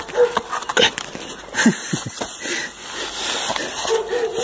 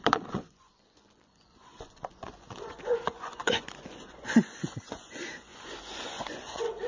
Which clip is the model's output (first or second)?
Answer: second